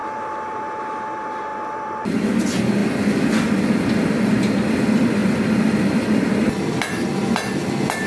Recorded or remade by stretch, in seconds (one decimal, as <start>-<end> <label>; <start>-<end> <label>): 0.0-0.6 remade; 0.6-1.5 recorded; 1.5-2.4 remade; 2.4-2.8 recorded; 2.8-4.3 remade; 4.3-5.2 recorded; 5.2-6.2 remade; 6.2-8.1 recorded